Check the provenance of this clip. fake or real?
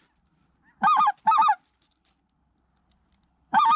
fake